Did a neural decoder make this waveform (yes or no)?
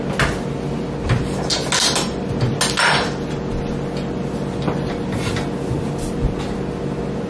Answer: no